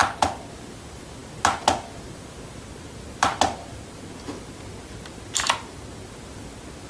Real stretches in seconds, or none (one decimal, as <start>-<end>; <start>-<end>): 0.0-6.9